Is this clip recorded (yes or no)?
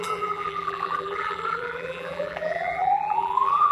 no